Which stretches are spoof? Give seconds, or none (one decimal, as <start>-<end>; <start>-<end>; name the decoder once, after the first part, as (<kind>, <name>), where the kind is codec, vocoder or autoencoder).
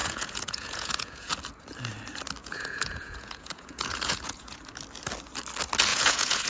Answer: 0.0-1.3 (vocoder, Vocos); 2.4-4.6; 5.9-6.5